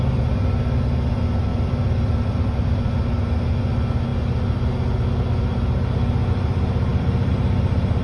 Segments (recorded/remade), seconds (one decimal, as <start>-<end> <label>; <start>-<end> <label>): 0.0-1.5 recorded; 1.5-2.9 remade; 2.9-6.9 recorded; 6.9-7.4 remade; 7.4-8.0 recorded